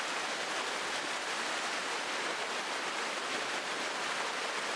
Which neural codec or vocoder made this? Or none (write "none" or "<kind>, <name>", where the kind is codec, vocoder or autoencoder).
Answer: none